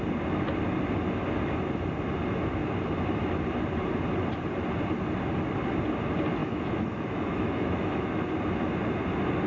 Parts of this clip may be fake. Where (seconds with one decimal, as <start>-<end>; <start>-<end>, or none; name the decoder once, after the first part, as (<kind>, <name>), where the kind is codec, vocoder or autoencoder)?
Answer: 6.4-8.2 (autoencoder, DAC-VAE)